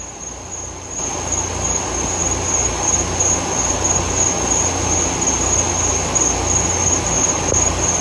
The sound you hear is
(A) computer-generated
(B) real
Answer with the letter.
B